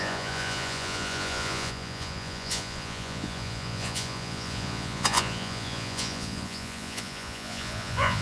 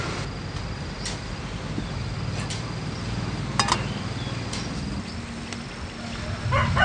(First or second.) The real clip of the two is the second